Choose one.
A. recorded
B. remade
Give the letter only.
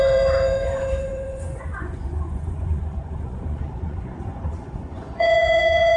B